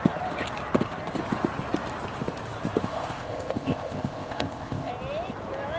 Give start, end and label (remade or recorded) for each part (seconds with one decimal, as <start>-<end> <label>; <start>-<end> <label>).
0.0-2.8 recorded; 2.8-4.9 remade; 4.9-5.8 recorded